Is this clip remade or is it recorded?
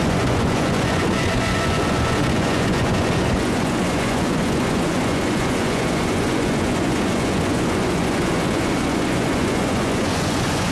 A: remade